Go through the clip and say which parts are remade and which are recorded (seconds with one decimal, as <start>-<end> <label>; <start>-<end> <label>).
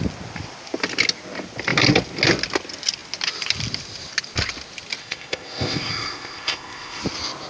0.0-5.0 recorded; 5.0-7.0 remade; 7.0-7.5 recorded